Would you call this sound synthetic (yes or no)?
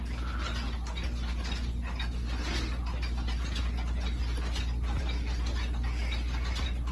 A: no